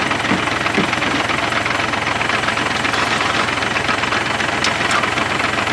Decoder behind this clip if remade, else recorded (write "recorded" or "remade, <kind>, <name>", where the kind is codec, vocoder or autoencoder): recorded